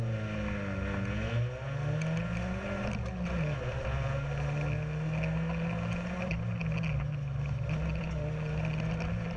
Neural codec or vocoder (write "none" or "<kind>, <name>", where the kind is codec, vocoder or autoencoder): none